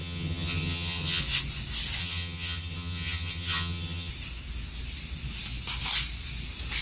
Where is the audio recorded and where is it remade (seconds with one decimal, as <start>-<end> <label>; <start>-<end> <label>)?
0.0-1.2 remade; 1.2-2.0 recorded; 2.0-4.1 remade; 4.1-6.8 recorded